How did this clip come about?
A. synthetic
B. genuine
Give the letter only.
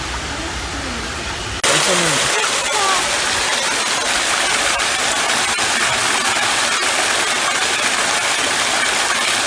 B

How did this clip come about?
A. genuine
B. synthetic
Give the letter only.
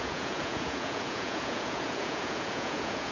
B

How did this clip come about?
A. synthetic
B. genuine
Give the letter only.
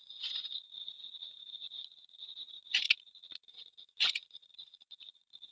A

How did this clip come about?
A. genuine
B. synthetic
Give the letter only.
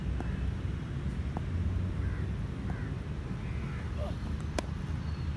A